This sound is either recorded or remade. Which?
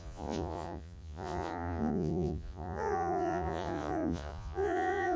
remade